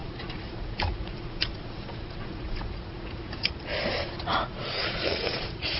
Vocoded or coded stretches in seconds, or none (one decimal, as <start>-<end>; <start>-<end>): 0.0-3.5; 4.3-5.8

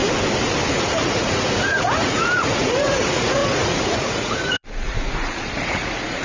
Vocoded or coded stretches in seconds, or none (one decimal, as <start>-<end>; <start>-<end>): 0.7-6.2